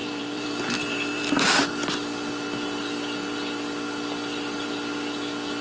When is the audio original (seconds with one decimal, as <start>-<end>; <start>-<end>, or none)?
1.7-5.6